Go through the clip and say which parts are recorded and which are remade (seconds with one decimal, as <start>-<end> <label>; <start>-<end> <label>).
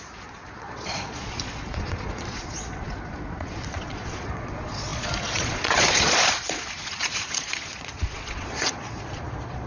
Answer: 0.0-9.7 remade